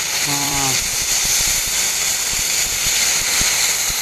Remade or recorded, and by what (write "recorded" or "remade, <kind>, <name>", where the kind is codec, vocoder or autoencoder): remade, vocoder, BigVGAN v2